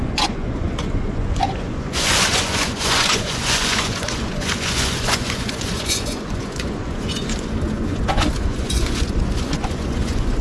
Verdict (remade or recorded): remade